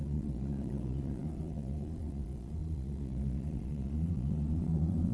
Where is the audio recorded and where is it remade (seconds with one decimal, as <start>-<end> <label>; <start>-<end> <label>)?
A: 0.0-5.1 remade